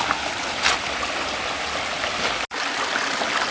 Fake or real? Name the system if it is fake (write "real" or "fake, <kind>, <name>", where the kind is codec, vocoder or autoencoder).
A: real